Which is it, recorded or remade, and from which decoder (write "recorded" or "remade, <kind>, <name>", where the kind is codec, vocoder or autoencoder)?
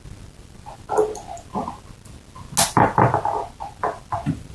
recorded